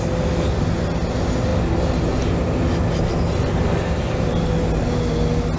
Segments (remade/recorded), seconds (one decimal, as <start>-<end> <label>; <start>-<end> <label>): 0.0-5.6 recorded

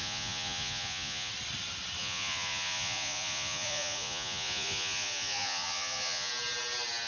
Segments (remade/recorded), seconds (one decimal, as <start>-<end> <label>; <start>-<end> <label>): 0.0-1.3 remade; 1.3-2.0 recorded; 2.0-6.3 remade; 6.3-7.1 recorded

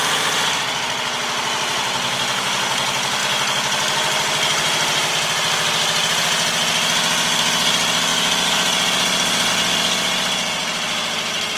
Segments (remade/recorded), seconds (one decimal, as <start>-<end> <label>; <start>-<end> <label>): 0.0-11.6 recorded

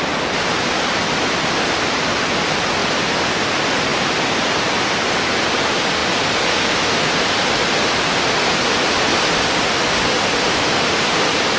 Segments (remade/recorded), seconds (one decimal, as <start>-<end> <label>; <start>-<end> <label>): 0.0-11.6 recorded

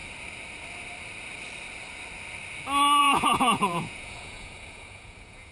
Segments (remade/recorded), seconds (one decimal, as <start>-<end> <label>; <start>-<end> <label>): 0.0-3.0 recorded; 3.0-5.5 remade

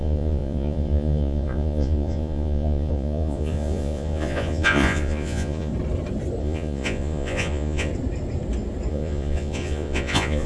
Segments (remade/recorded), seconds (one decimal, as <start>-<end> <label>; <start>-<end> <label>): 0.0-5.7 remade; 5.7-6.4 recorded; 6.4-7.9 remade; 7.9-8.9 recorded; 8.9-10.5 remade

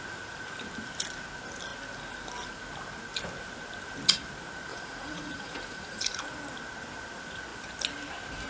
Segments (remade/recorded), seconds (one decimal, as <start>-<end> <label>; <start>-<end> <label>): 0.0-4.7 recorded; 4.7-6.2 remade; 6.2-8.5 recorded

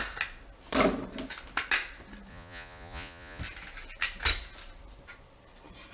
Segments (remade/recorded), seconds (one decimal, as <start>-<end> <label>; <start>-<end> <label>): 0.0-2.3 recorded; 2.3-3.4 remade; 3.4-5.9 recorded